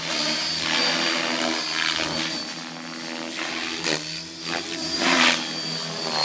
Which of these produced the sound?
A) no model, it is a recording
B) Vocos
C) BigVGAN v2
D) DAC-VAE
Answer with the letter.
A